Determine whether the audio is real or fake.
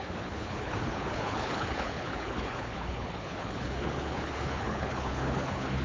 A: fake